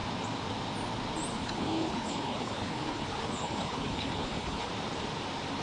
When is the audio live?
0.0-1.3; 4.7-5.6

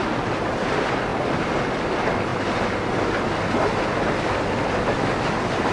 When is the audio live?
0.0-5.7

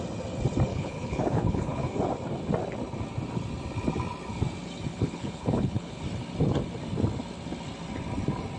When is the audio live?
0.0-0.7; 1.9-4.9; 6.0-8.6